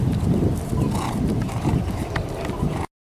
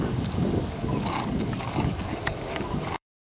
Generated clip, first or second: second